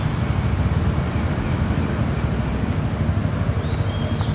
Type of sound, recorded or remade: recorded